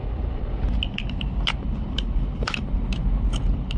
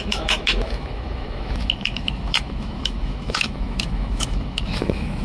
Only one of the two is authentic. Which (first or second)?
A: first